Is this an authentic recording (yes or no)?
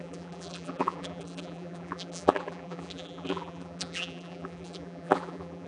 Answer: no